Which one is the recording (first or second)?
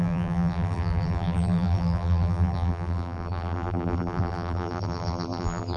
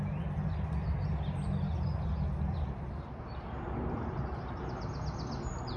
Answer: second